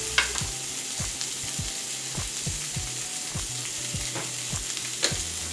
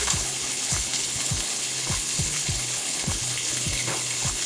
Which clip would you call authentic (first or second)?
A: first